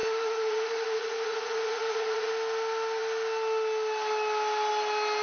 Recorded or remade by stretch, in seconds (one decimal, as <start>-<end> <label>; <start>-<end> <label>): 0.0-2.3 remade; 2.3-5.2 recorded